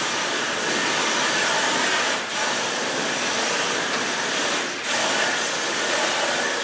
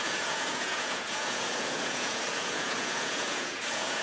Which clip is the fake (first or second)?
second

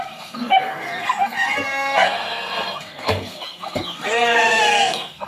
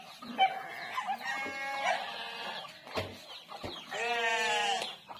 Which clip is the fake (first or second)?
first